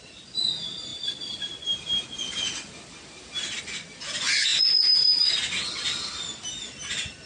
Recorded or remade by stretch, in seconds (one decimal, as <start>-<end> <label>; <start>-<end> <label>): 0.0-7.3 recorded